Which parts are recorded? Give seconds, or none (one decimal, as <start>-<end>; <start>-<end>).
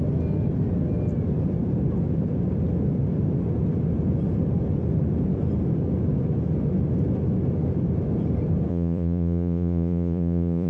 0.0-8.7